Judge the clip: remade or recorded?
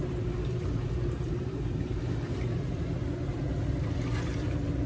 remade